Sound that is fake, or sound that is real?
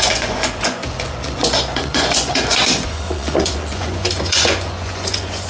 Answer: fake